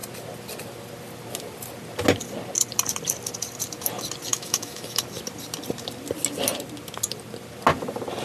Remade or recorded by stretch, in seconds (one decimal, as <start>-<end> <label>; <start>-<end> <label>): 0.0-4.3 recorded; 4.3-5.0 remade; 5.0-8.2 recorded

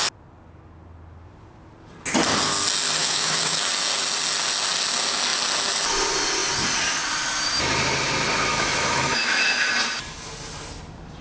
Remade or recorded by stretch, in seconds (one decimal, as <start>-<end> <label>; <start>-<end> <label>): 0.0-3.0 recorded; 3.0-3.7 remade; 3.7-8.5 recorded; 8.5-9.7 remade; 9.7-11.2 recorded